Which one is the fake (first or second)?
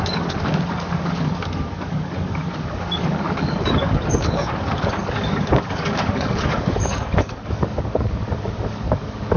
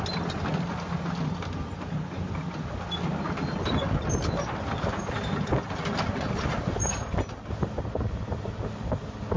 first